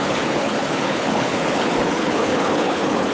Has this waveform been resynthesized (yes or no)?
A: yes